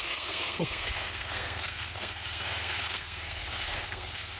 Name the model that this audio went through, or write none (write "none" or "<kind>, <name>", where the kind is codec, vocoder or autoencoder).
codec, SNAC